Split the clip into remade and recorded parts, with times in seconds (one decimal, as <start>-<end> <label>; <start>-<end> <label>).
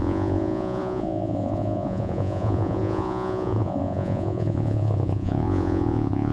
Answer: 0.0-6.3 remade